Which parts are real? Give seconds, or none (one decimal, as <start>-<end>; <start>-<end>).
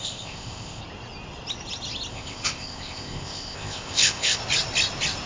0.8-2.1; 4.4-5.3